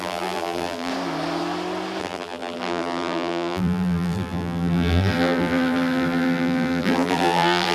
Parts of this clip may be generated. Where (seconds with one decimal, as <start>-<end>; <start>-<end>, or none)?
0.0-0.9; 2.0-7.7